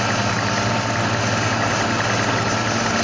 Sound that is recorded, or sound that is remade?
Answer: recorded